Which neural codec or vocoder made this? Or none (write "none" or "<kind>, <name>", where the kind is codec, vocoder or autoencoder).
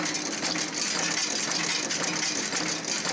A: none